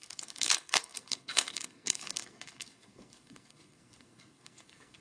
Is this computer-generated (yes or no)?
yes